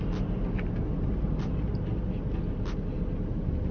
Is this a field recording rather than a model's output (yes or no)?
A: yes